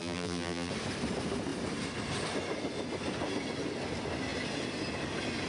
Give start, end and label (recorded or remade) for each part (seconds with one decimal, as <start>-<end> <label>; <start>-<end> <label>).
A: 0.0-0.7 remade; 0.7-5.5 recorded

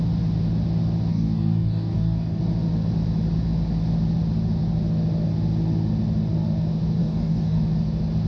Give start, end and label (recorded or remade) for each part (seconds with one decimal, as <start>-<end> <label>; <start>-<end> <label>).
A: 0.0-1.1 recorded; 1.1-2.4 remade; 2.4-7.0 recorded; 7.0-7.6 remade; 7.6-8.3 recorded

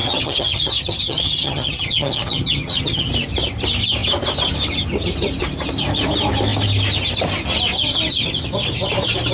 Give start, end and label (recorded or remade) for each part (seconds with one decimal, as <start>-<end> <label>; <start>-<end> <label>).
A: 0.0-3.1 remade; 3.1-9.3 recorded

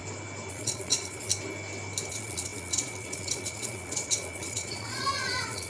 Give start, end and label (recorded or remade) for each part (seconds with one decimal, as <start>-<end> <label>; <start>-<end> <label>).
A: 0.0-0.5 recorded; 0.5-1.3 remade; 1.3-2.1 recorded; 2.1-5.7 remade

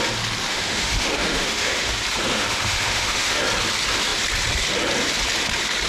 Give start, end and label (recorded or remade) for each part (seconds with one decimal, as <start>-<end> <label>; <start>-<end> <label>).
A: 0.0-0.5 recorded; 0.5-1.9 remade; 1.9-2.3 recorded; 2.3-3.4 remade; 3.4-5.9 recorded